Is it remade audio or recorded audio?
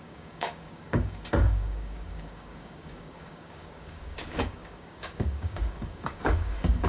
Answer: remade